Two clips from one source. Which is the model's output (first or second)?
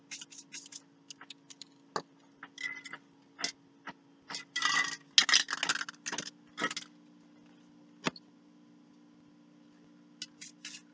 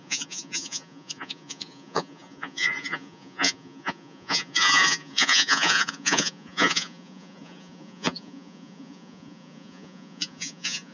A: second